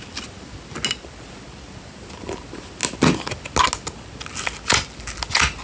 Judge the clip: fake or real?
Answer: real